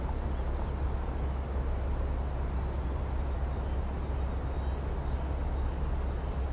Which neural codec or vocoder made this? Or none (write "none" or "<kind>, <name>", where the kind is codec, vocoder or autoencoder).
none